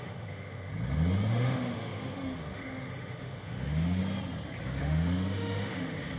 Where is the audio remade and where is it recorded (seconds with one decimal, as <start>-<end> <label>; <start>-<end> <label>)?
0.0-0.7 remade; 0.7-1.3 recorded; 1.3-4.0 remade; 4.0-4.8 recorded; 4.8-6.2 remade